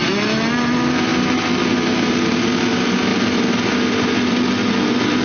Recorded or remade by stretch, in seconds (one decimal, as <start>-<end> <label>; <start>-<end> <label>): 0.0-5.2 recorded